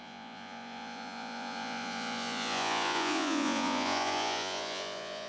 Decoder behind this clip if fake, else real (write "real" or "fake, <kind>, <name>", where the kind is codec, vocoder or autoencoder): fake, vocoder, Vocos